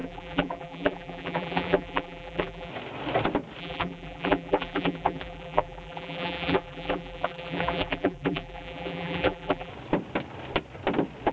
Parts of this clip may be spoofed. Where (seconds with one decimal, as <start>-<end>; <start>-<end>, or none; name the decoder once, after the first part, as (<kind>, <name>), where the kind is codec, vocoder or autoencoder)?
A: 0.0-2.7 (vocoder, BigVGAN v2); 3.6-9.7